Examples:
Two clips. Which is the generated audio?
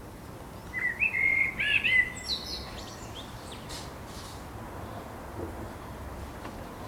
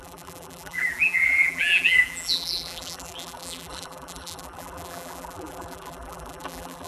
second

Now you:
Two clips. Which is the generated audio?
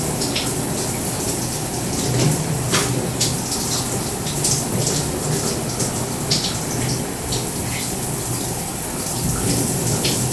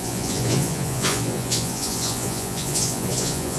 second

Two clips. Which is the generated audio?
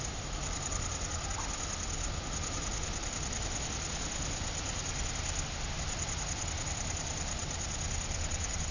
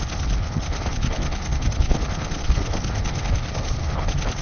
second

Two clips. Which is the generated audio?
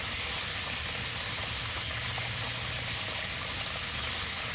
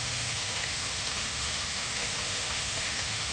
second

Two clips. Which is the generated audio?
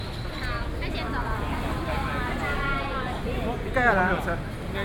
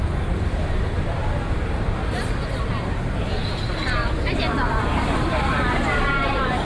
second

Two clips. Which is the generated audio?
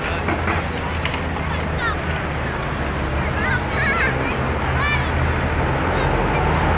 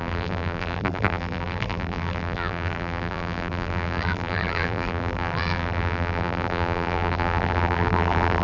second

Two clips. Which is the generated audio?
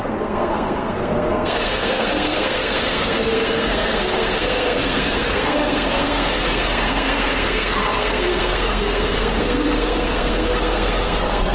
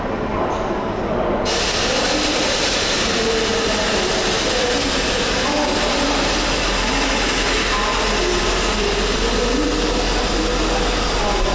first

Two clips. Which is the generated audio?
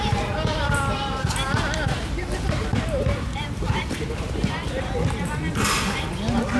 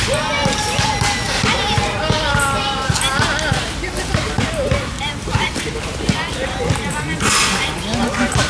first